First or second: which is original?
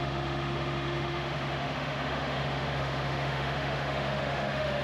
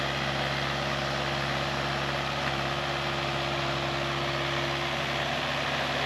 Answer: second